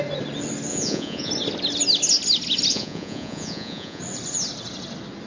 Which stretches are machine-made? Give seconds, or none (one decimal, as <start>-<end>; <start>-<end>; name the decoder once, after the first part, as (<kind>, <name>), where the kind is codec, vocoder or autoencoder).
0.7-1.3 (vocoder, Vocos); 2.7-4.0